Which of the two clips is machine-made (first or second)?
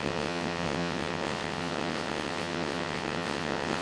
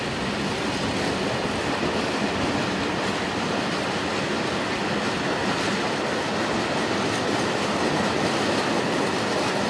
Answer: first